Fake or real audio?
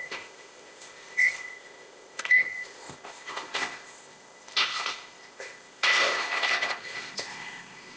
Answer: fake